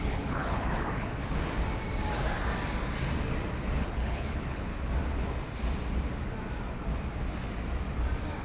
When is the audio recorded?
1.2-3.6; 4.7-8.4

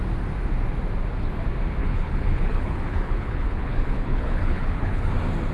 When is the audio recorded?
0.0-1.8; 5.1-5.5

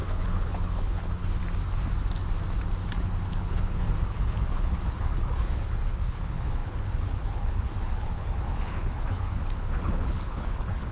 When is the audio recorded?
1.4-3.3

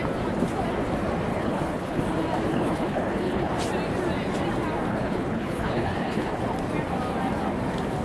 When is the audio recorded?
0.0-1.3; 2.0-2.5; 3.5-4.9; 6.4-8.0

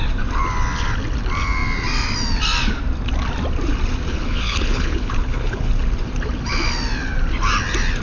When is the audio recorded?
0.0-4.1; 5.7-8.0

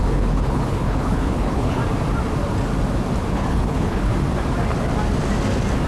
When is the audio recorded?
1.8-3.3; 4.1-5.9

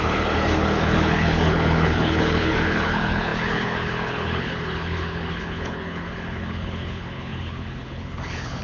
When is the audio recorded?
none

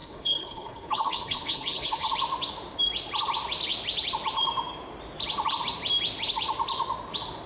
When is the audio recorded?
2.1-7.5